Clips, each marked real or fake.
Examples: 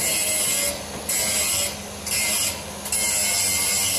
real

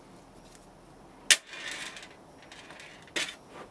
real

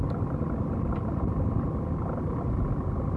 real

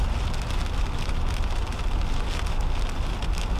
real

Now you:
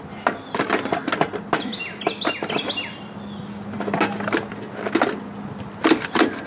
real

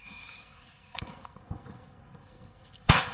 fake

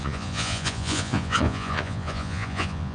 fake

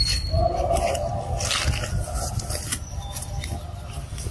real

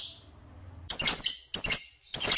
real